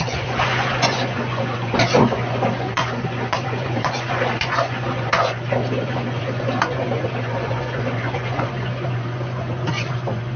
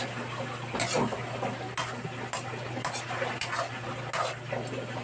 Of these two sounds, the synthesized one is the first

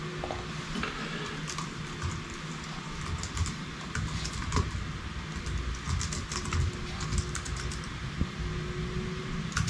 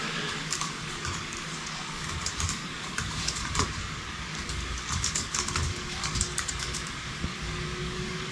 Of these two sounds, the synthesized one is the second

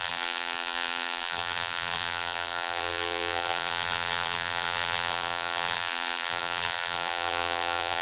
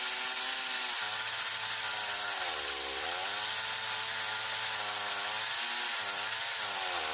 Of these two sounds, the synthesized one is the first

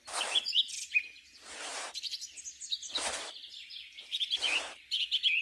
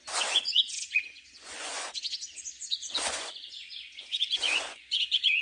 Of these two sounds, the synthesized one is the second